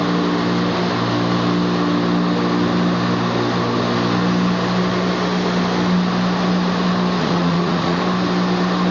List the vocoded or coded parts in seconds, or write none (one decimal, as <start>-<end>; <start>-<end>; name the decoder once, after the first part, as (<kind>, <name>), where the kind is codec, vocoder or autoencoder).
7.2-8.0 (vocoder, Vocos)